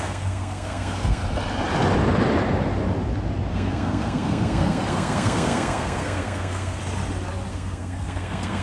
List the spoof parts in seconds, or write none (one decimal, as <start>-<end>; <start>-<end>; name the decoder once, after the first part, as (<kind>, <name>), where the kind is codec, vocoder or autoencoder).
0.0-1.2 (codec, SNAC); 3.5-6.8; 7.5-8.6